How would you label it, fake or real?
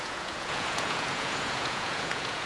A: fake